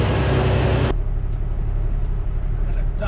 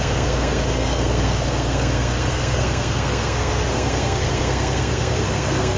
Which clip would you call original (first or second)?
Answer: first